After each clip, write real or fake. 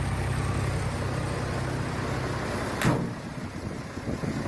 real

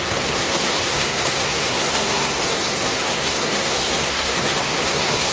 fake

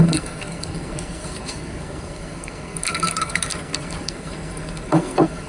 fake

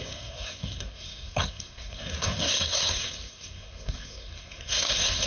fake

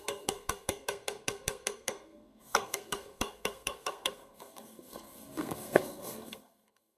fake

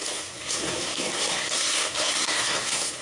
fake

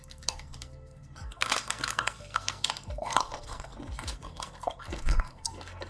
fake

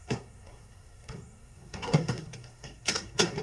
fake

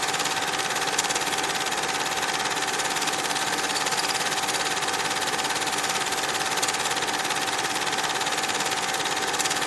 real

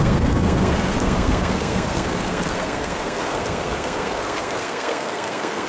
fake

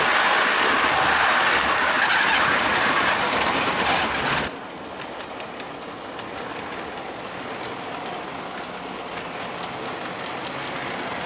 real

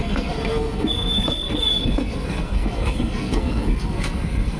fake